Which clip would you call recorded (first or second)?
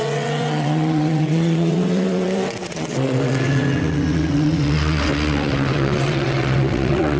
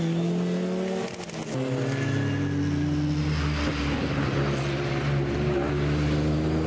second